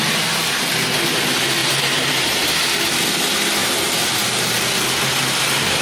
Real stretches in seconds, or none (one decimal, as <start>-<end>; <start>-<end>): 0.0-1.6; 2.6-3.6; 4.7-5.8